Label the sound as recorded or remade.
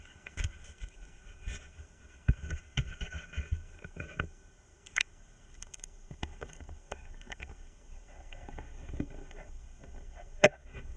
remade